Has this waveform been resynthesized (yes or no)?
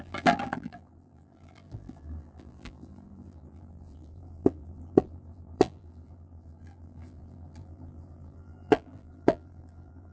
yes